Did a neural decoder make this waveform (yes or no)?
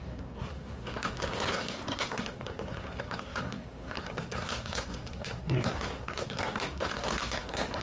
yes